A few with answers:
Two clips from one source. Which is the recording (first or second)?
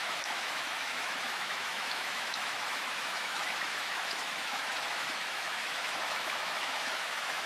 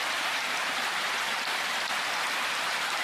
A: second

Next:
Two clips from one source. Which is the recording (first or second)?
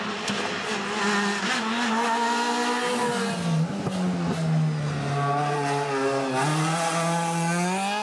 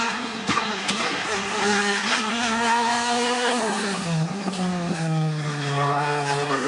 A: first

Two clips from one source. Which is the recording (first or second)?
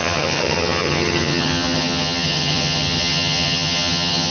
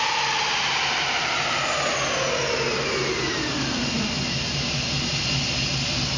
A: second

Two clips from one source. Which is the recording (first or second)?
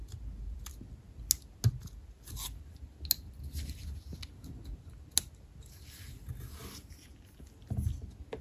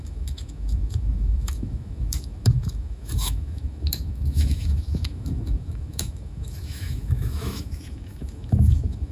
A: first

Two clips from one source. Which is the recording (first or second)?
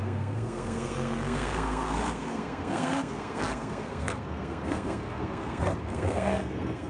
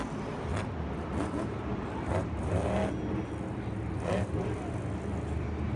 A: second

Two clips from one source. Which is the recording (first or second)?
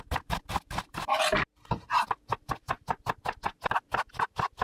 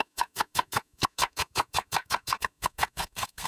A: first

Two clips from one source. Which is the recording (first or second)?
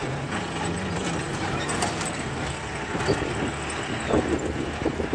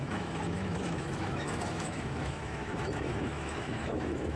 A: first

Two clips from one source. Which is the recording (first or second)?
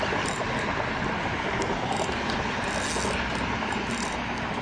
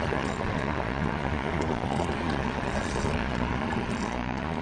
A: first